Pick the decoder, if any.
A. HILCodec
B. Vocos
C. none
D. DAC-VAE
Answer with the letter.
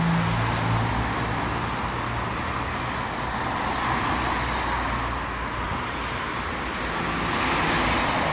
C